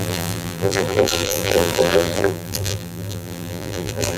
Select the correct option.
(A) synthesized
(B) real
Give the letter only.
A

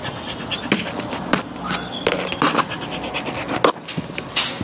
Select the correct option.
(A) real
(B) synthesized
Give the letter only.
A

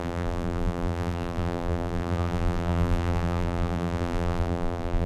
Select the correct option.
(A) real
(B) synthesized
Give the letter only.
B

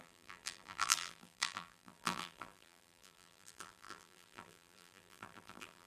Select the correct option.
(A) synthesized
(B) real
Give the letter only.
A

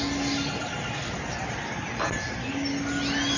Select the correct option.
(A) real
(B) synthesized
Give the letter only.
A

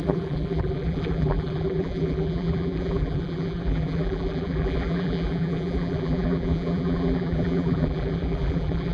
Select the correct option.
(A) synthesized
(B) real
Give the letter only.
A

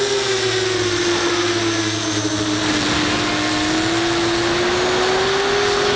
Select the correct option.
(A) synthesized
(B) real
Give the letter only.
B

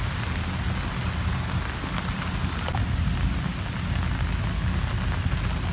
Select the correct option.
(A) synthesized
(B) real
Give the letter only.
B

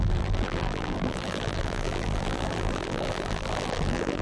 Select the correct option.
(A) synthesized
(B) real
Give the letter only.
A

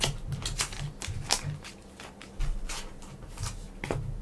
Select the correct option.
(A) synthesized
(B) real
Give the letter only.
B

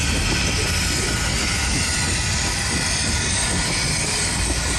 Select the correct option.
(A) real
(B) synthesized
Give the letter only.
A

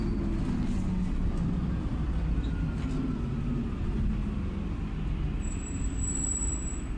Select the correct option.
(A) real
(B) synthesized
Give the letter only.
A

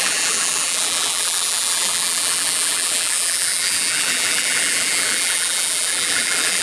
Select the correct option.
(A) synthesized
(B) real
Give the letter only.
A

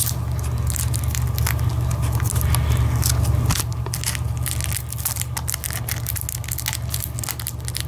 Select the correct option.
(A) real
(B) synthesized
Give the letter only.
A